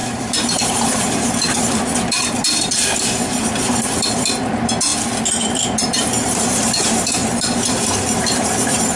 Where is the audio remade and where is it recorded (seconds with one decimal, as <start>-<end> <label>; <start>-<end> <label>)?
0.0-4.9 remade; 4.9-5.5 recorded; 5.5-7.2 remade; 7.2-7.8 recorded; 7.8-9.0 remade